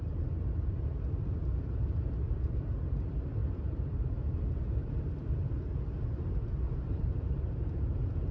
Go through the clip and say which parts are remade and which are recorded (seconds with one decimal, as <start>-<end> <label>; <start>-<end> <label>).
0.0-8.3 remade